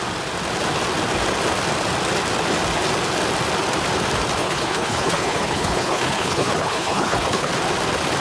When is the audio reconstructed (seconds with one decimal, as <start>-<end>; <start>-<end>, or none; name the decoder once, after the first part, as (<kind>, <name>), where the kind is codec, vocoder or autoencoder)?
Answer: 4.4-7.5 (codec, HILCodec)